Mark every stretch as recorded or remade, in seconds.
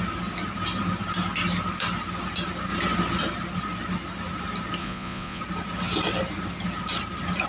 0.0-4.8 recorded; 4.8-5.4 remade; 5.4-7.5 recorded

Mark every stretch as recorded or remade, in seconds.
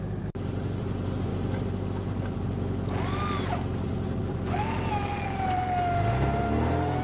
0.0-7.0 recorded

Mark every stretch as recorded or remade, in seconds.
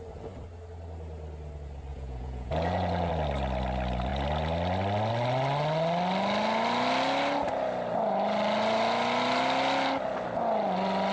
0.0-1.9 recorded; 1.9-3.1 remade; 3.1-11.1 recorded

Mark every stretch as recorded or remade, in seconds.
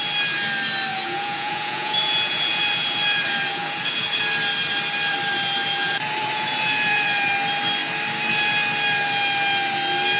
0.0-0.9 recorded; 0.9-4.2 remade; 4.2-5.6 recorded; 5.6-7.3 remade; 7.3-10.2 recorded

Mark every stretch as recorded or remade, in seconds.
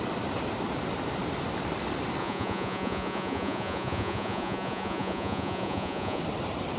0.0-2.2 recorded; 2.2-6.2 remade; 6.2-6.8 recorded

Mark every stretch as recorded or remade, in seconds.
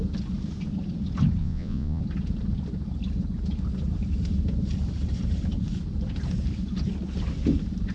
0.0-1.4 recorded; 1.4-2.0 remade; 2.0-7.9 recorded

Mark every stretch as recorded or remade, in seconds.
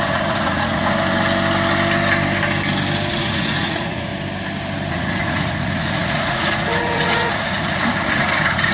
0.0-0.8 remade; 0.8-3.1 recorded; 3.1-4.1 remade; 4.1-4.9 recorded; 4.9-8.7 remade